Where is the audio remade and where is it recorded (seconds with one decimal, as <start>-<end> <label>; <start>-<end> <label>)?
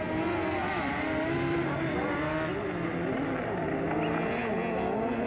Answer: 0.0-0.6 recorded; 0.6-2.2 remade; 2.2-2.9 recorded; 2.9-3.7 remade; 3.7-5.3 recorded